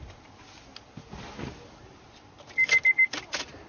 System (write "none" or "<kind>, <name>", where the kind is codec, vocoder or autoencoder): none